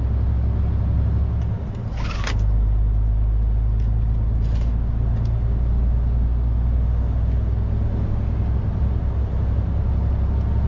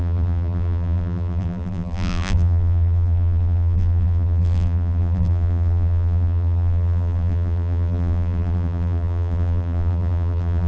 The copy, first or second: second